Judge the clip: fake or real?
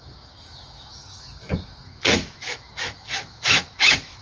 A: fake